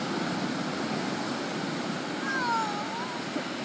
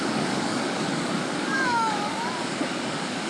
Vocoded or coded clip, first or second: second